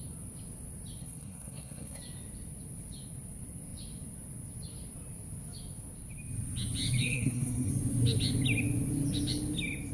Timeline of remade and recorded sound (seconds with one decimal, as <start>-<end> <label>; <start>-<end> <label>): 0.0-1.0 recorded; 1.0-2.0 remade; 2.0-7.0 recorded; 7.0-7.7 remade; 7.7-9.9 recorded